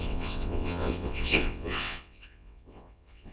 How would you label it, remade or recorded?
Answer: remade